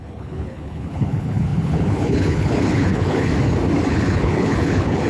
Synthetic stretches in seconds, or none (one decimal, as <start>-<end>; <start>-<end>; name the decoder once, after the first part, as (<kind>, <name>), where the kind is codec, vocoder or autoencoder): 0.0-3.3 (codec, HILCodec); 3.9-5.1